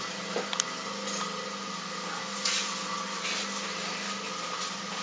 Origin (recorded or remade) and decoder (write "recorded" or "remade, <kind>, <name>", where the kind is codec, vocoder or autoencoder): recorded